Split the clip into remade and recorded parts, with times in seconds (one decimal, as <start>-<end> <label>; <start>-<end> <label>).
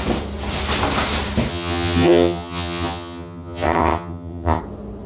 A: 0.0-1.5 recorded; 1.5-4.6 remade; 4.6-5.1 recorded